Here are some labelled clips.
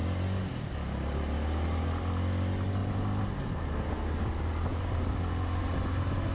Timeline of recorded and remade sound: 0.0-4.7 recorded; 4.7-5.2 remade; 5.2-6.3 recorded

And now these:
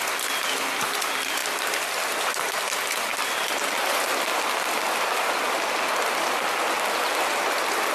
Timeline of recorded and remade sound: 0.0-3.1 recorded; 3.1-3.9 remade; 3.9-7.9 recorded

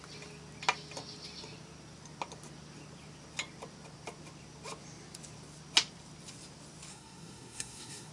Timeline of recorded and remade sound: 0.0-6.9 recorded; 6.9-8.1 remade